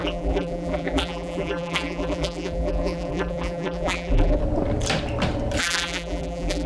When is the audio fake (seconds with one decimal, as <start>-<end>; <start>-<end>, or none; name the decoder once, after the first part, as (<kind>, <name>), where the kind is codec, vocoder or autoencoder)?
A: 0.0-4.4 (vocoder, BigVGAN v2); 5.6-6.7